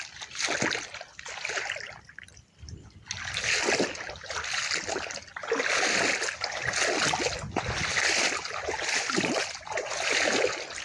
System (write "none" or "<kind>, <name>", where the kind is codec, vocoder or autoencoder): none